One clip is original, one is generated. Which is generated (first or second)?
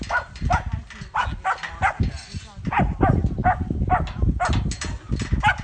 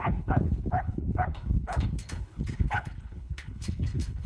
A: second